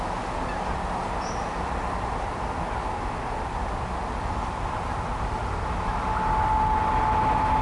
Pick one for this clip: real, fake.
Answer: real